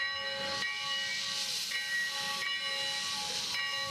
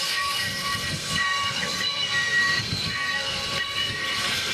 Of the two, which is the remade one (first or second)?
second